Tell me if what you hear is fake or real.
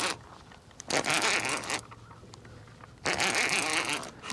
real